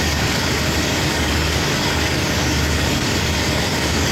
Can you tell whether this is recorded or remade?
remade